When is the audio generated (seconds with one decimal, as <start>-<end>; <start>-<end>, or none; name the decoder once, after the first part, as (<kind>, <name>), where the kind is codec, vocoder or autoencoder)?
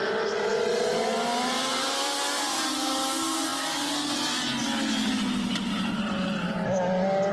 0.5-2.0 (vocoder, BigVGAN v2)